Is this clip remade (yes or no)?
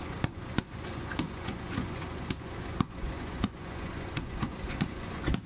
yes